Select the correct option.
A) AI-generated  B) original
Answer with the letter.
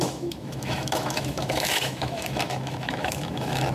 A